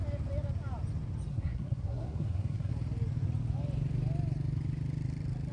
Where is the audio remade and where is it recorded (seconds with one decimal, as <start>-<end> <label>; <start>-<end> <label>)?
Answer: 0.0-1.3 recorded; 1.3-2.7 remade; 2.7-5.5 recorded